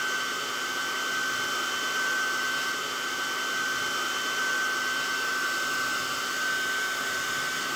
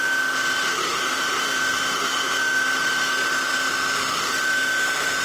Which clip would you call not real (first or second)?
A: second